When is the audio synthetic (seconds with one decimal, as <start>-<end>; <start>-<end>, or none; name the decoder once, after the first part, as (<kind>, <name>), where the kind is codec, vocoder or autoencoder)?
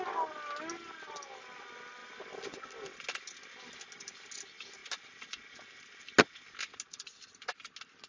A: none